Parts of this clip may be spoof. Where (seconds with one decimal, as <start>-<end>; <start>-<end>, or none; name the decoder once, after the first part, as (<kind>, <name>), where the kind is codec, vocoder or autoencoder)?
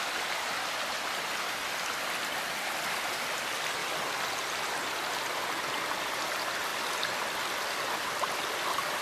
none